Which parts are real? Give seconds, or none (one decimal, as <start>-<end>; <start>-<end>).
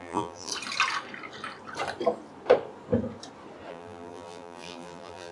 0.5-3.7